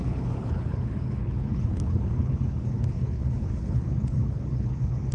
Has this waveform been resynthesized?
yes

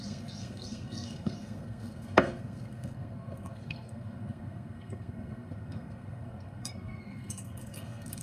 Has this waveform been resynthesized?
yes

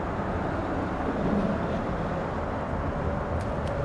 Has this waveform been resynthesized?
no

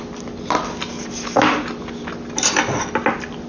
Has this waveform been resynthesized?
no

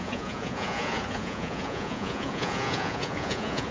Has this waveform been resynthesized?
yes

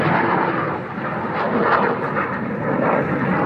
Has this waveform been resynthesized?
no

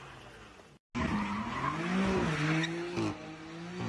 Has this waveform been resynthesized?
no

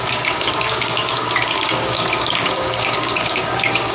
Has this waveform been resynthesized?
yes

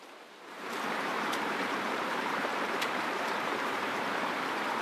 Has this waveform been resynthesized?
yes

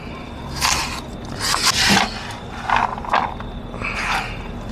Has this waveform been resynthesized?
no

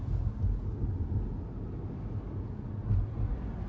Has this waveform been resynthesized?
no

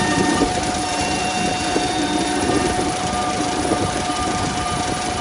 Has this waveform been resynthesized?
yes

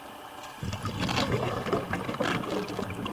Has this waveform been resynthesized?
no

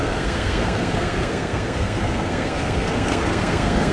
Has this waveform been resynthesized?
yes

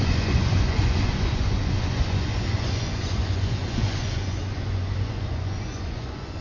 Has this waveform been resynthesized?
yes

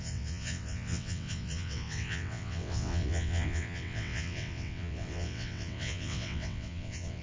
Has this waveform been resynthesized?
yes